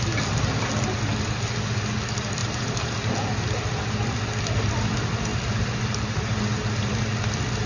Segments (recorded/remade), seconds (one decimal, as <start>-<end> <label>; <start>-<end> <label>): 0.0-2.4 recorded; 2.4-3.1 remade; 3.1-5.3 recorded; 5.3-7.3 remade; 7.3-7.7 recorded